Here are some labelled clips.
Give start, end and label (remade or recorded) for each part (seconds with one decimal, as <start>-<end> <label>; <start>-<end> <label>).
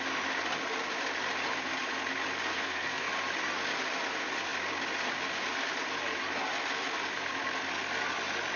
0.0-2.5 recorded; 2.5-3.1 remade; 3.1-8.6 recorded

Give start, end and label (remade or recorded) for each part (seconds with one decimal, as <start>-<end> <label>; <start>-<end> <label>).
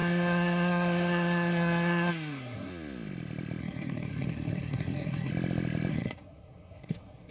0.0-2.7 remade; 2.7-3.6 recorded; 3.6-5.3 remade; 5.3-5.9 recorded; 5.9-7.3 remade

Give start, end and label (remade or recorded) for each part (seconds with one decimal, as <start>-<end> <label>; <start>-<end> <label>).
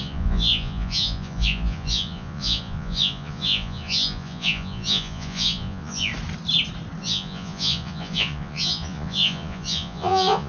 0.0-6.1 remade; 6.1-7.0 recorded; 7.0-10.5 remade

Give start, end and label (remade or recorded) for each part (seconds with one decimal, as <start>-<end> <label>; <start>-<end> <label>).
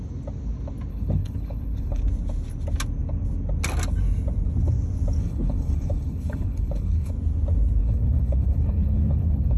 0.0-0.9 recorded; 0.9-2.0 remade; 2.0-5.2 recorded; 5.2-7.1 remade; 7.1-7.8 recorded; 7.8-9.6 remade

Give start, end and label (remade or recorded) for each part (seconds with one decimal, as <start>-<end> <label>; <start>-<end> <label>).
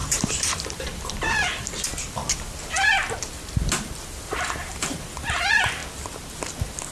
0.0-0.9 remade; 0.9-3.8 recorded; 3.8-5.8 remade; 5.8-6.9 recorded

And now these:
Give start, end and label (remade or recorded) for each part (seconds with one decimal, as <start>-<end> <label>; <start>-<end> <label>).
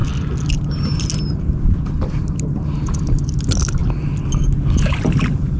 0.0-5.6 recorded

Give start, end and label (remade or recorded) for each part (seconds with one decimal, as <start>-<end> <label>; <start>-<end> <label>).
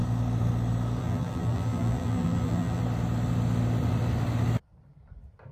0.0-1.0 recorded; 1.0-2.8 remade; 2.8-5.5 recorded